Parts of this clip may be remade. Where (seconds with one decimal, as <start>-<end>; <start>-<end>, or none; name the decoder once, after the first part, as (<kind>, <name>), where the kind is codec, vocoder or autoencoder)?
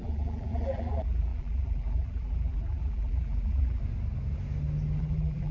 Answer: 0.0-3.8 (vocoder, BigVGAN v2); 5.0-5.5